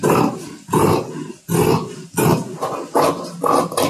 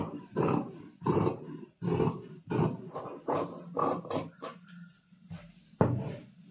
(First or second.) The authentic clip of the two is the first